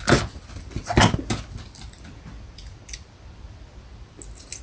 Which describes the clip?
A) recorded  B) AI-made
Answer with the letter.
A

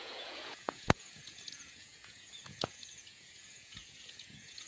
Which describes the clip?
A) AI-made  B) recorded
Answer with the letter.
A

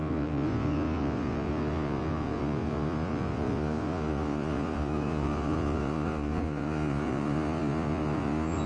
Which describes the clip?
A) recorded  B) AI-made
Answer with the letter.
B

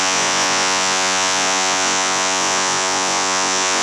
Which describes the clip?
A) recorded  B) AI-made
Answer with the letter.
B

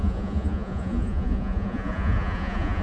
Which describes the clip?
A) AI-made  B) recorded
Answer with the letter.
A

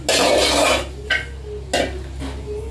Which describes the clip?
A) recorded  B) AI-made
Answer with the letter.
A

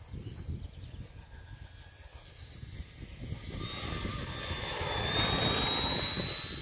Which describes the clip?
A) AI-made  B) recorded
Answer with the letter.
B